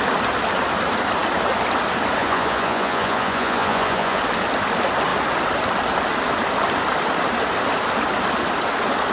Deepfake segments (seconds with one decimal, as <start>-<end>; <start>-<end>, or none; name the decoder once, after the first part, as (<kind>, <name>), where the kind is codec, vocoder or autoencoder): 2.2-4.2 (vocoder, Vocos)